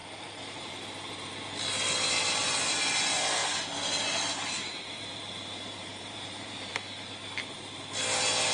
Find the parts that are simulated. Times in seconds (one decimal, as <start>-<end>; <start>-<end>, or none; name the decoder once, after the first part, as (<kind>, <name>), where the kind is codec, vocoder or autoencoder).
0.0-0.7 (vocoder, BigVGAN v2); 3.4-7.1